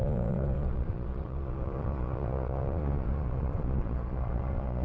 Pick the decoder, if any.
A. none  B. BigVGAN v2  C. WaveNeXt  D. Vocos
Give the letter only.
D